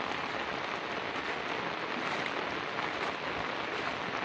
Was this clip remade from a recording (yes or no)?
no